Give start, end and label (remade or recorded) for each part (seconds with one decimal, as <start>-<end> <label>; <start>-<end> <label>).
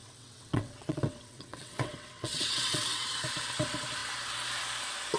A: 0.0-3.1 remade; 3.1-5.2 recorded